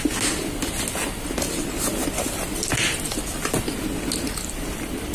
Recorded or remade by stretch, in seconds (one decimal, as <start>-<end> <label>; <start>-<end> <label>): 0.0-5.1 recorded